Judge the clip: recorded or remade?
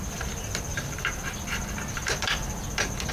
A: recorded